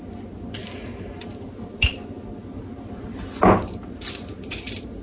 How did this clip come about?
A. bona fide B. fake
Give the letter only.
A